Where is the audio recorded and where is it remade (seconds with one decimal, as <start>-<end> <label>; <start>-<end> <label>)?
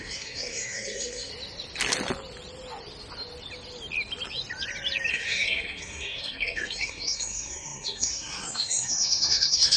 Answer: 0.0-1.3 remade; 1.3-5.1 recorded; 5.1-9.8 remade